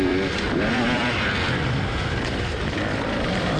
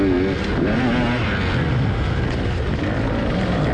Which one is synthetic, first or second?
first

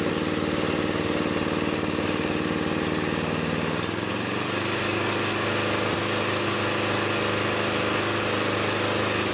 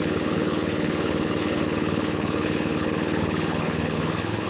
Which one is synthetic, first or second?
second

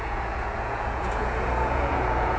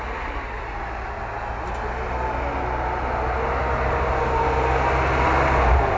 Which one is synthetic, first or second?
first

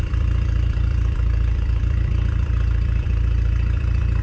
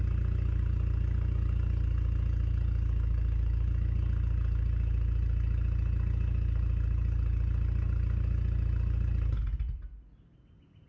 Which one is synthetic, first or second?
first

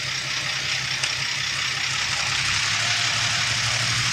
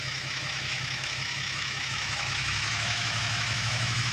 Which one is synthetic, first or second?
second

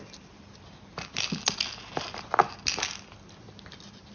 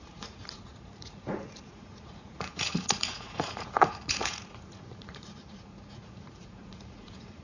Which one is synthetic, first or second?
second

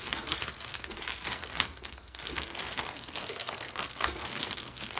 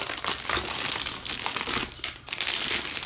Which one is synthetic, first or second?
first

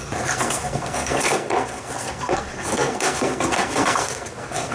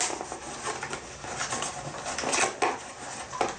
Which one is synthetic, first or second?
first